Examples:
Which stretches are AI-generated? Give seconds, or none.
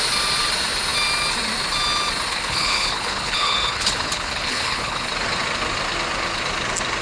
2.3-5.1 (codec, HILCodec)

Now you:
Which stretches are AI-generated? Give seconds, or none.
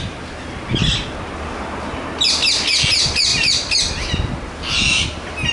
none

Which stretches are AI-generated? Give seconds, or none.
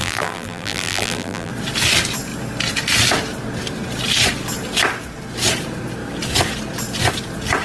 0.0-1.5 (vocoder, BigVGAN v2)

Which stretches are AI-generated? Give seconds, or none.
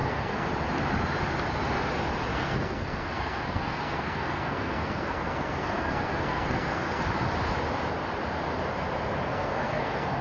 0.0-0.5 (codec, SNAC); 2.3-7.0; 9.3-10.2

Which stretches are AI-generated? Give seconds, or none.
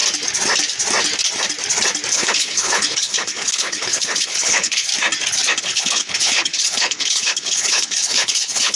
2.1-4.9 (codec, HILCodec); 5.6-8.8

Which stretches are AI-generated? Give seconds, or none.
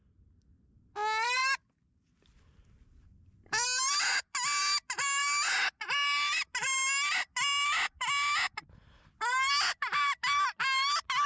none